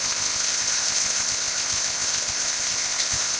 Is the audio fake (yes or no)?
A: yes